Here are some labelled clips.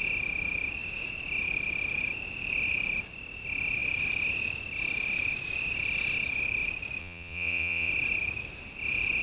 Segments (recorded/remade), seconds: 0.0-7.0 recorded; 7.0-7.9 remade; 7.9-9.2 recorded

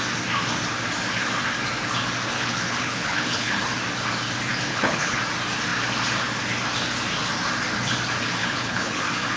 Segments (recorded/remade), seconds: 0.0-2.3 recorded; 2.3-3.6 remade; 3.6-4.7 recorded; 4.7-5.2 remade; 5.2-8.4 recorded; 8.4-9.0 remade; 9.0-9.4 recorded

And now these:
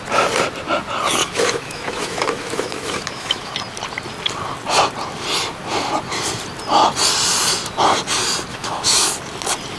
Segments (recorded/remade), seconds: 0.0-1.2 recorded; 1.2-3.5 remade; 3.5-8.5 recorded; 8.5-9.2 remade; 9.2-9.8 recorded

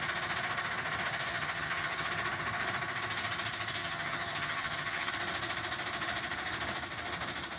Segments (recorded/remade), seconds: 0.0-1.3 recorded; 1.3-2.1 remade; 2.1-3.8 recorded; 3.8-5.1 remade; 5.1-7.6 recorded